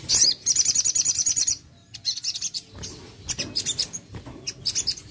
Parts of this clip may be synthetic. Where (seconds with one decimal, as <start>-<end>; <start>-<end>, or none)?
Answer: none

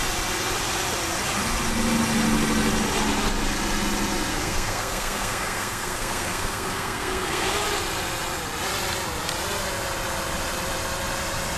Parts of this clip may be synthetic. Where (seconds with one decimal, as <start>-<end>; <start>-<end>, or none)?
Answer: 4.3-7.5

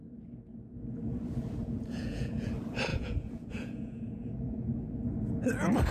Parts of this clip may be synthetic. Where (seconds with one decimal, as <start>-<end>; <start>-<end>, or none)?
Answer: 1.6-2.5; 2.9-5.1

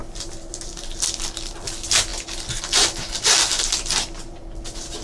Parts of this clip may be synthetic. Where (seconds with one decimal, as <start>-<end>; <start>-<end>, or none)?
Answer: none

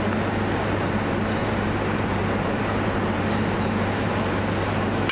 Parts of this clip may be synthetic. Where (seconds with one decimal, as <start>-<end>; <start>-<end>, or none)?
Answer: 1.4-4.5

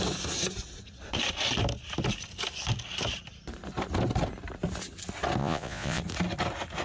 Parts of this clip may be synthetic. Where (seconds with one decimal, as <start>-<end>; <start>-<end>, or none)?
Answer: 5.4-6.0

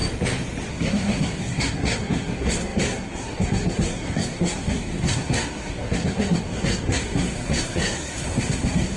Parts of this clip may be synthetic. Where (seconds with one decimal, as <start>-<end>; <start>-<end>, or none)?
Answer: 0.7-9.0